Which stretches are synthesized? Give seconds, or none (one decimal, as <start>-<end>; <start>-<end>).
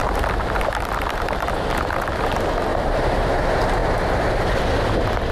2.7-3.3